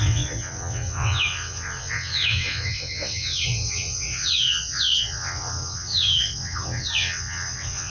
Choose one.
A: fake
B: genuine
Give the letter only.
A